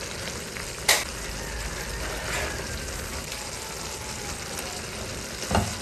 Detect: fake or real real